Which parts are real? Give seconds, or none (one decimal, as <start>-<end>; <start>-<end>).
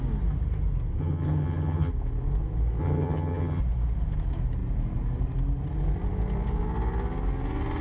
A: 0.0-1.0; 1.9-2.8; 3.6-7.8